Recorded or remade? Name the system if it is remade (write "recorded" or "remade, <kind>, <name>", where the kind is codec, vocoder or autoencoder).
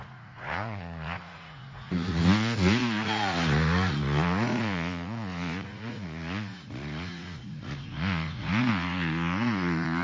remade, vocoder, Vocos